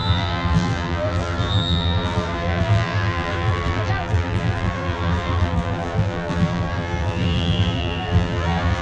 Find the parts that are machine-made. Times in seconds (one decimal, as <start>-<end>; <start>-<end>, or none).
0.0-8.8